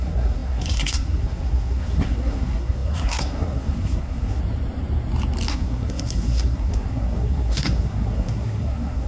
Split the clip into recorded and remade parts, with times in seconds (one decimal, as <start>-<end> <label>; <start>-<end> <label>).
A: 0.0-4.4 remade; 4.4-5.5 recorded; 5.5-9.1 remade